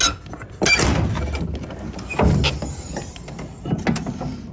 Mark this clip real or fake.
real